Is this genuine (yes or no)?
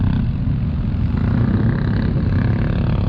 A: yes